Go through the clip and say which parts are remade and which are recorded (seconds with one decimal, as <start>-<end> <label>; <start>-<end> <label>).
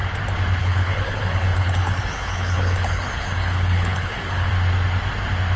0.0-0.6 recorded; 0.6-4.5 remade; 4.5-5.6 recorded